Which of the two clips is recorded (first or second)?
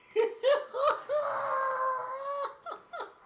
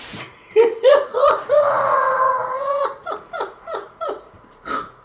first